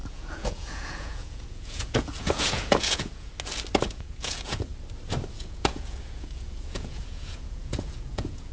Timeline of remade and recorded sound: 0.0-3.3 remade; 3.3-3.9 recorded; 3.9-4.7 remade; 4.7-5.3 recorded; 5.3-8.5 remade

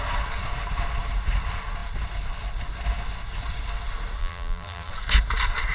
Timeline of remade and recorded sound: 0.0-4.2 recorded; 4.2-4.9 remade; 4.9-5.7 recorded

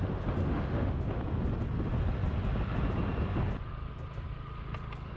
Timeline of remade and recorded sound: 0.0-0.4 recorded; 0.4-1.2 remade; 1.2-5.2 recorded

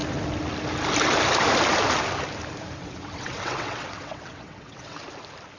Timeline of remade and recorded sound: 0.0-2.8 recorded; 2.8-5.0 remade; 5.0-5.6 recorded

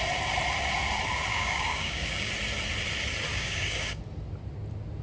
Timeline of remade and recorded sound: 0.0-1.3 recorded; 1.3-2.3 remade; 2.3-3.3 recorded; 3.3-4.0 remade; 4.0-5.0 recorded